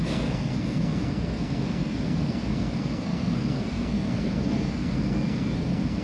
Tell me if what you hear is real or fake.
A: fake